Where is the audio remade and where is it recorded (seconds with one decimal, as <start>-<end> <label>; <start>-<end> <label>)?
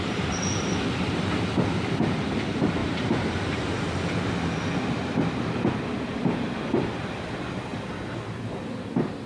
0.0-2.8 remade; 2.8-5.7 recorded; 5.7-7.7 remade; 7.7-8.7 recorded; 8.7-9.3 remade